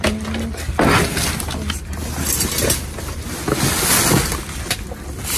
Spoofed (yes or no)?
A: no